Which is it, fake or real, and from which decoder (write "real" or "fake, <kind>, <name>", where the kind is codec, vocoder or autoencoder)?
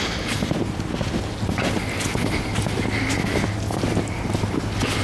real